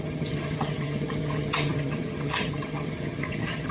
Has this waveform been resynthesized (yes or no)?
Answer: yes